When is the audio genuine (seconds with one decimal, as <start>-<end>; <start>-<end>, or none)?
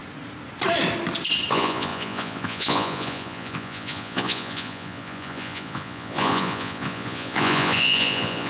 0.0-1.5